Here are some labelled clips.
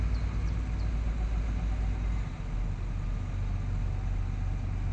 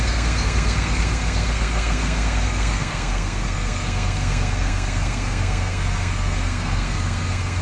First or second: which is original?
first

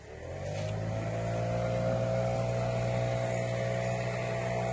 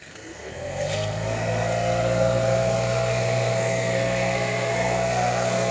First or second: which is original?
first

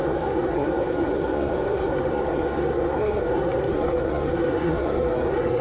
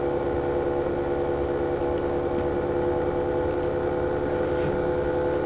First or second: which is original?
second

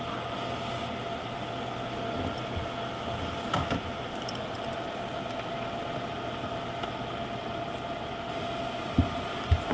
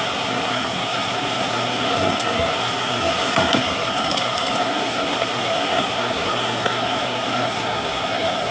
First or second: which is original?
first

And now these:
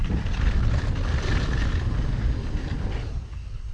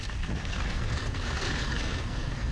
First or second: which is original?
first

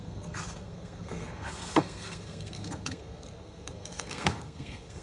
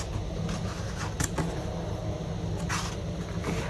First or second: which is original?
second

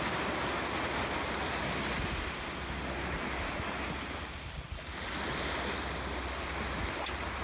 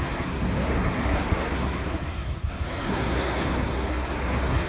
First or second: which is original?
first